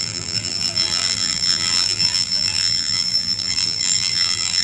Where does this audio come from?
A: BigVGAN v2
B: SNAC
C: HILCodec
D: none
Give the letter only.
A